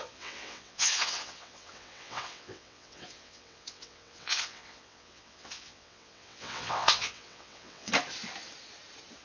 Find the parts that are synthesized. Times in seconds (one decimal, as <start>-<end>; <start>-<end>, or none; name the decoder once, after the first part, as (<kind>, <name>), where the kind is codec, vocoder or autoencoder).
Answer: 0.0-7.9 (vocoder, WaveNeXt)